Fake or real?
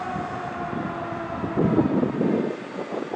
real